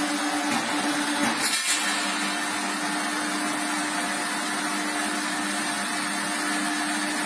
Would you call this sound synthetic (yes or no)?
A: no